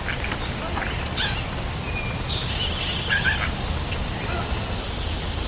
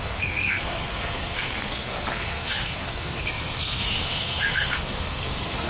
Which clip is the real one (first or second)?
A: first